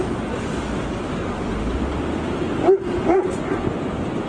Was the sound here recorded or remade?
recorded